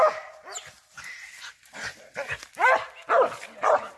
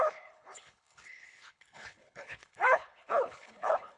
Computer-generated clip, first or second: second